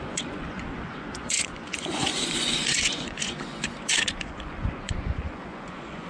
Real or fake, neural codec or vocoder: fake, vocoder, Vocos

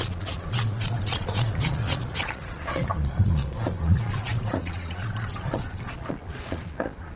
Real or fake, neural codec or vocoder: fake, vocoder, Vocos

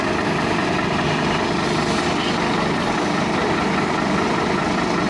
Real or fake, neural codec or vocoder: real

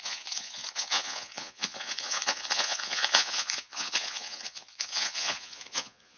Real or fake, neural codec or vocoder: fake, vocoder, Vocos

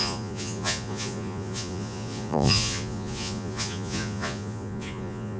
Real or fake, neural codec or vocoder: fake, vocoder, Vocos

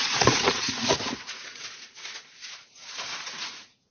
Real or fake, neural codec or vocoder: fake, vocoder, Vocos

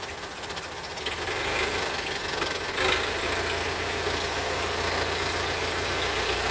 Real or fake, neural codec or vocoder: real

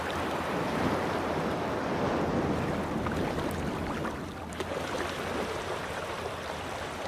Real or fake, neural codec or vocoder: real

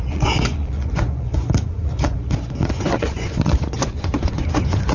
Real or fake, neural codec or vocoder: fake, vocoder, Vocos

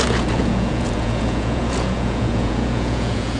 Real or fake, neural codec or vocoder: fake, vocoder, Vocos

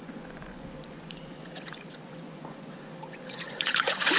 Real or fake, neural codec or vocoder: fake, vocoder, Vocos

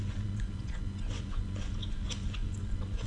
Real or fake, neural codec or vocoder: fake, vocoder, Vocos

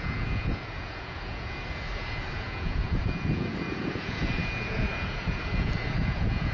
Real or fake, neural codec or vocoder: fake, vocoder, Vocos